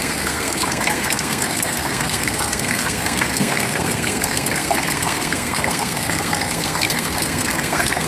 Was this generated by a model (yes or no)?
yes